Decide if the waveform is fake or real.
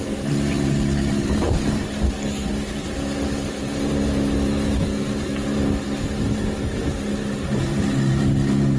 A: real